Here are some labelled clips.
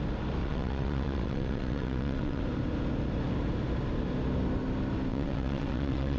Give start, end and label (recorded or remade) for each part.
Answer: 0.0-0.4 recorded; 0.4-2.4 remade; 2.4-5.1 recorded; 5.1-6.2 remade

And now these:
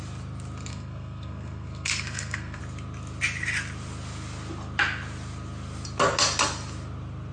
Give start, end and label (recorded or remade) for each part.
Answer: 0.0-0.7 recorded; 0.7-2.6 remade; 2.6-7.3 recorded

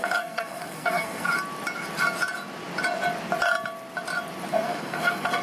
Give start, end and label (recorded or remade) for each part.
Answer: 0.0-1.3 remade; 1.3-4.5 recorded; 4.5-5.4 remade